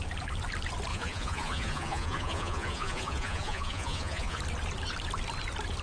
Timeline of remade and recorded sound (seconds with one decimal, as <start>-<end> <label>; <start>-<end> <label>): 0.0-0.9 recorded; 0.9-4.4 remade; 4.4-5.8 recorded